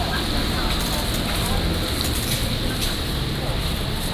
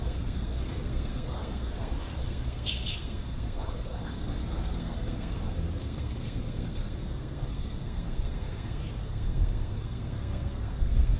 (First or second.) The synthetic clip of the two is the second